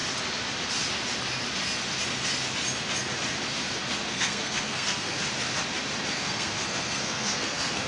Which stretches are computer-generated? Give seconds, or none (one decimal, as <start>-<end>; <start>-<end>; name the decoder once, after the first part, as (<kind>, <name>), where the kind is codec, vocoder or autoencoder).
4.1-5.2 (codec, SNAC); 6.1-7.9